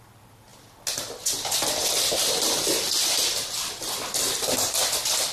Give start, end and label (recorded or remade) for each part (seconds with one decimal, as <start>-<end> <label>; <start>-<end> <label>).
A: 0.0-5.3 recorded